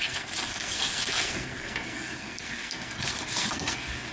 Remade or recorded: remade